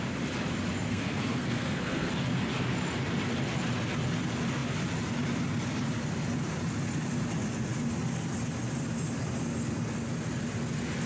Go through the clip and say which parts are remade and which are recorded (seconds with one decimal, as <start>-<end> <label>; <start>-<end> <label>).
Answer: 0.0-0.9 recorded; 0.9-2.1 remade; 2.1-11.1 recorded